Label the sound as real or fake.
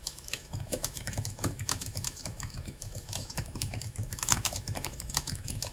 fake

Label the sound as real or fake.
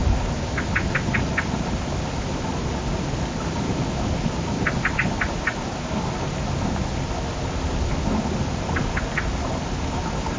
real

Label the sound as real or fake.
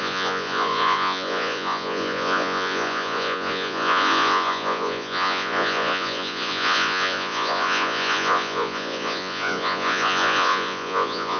fake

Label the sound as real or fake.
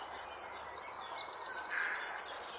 real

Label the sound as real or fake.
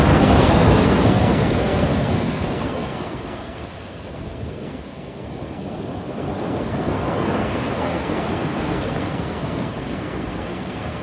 fake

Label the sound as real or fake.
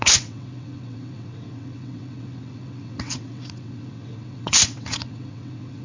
fake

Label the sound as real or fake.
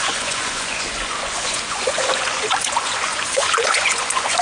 fake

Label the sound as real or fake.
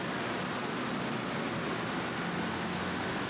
real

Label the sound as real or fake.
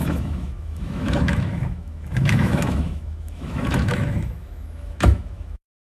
fake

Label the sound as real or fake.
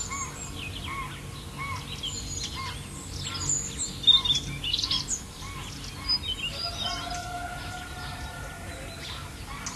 real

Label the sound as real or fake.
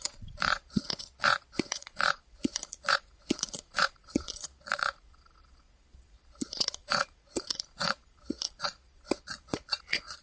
fake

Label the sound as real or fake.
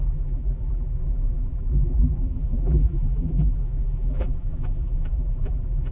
fake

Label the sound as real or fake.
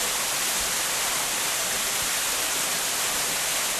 real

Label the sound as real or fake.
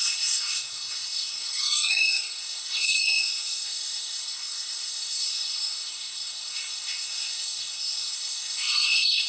fake